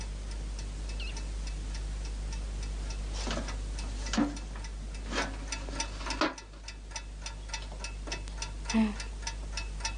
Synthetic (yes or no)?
no